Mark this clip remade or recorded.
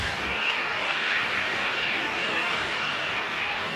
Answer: remade